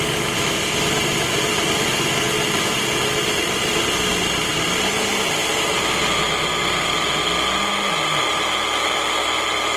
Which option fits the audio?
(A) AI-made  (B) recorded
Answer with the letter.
B